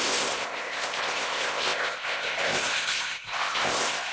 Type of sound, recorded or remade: remade